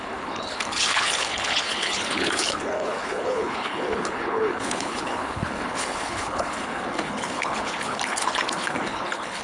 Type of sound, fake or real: fake